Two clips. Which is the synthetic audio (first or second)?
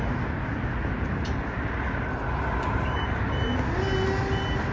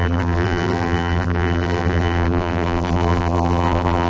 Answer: second